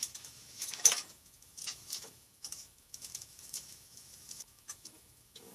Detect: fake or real fake